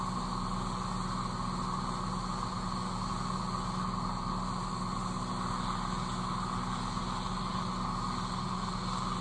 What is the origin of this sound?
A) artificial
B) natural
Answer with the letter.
B